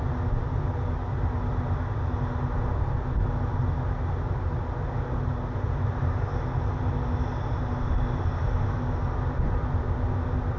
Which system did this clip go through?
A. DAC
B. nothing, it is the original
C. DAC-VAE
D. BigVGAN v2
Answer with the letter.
B